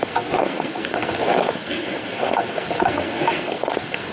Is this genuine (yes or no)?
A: no